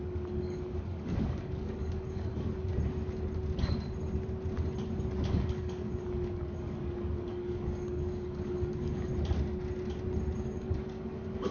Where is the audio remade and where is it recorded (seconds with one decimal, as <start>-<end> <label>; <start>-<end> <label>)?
0.0-2.7 remade; 2.7-5.3 recorded; 5.3-9.1 remade; 9.1-10.4 recorded; 10.4-11.5 remade